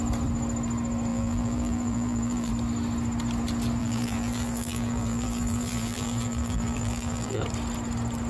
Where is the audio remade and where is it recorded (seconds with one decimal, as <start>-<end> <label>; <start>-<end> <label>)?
0.0-1.1 recorded; 1.1-2.5 remade; 2.5-3.8 recorded; 3.8-7.4 remade; 7.4-8.3 recorded